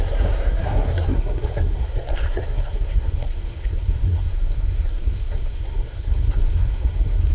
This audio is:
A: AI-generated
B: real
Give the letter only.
A